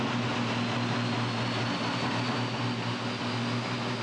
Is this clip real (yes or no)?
yes